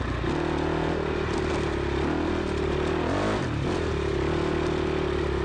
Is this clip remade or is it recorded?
recorded